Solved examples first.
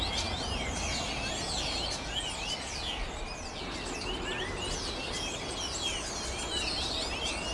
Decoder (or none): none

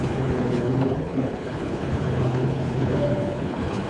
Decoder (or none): codec, HILCodec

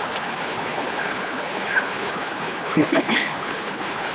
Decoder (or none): codec, HILCodec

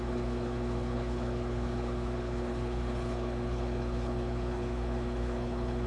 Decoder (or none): codec, HILCodec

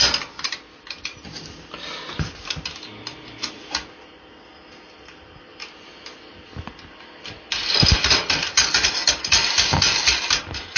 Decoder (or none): none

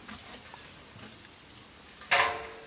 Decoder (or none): none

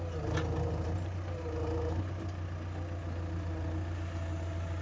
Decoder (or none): none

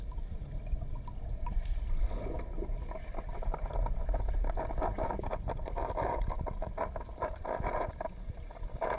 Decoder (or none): none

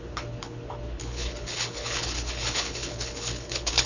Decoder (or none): codec, HILCodec